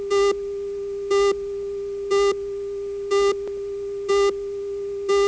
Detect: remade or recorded recorded